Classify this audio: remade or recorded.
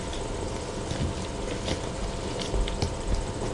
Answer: recorded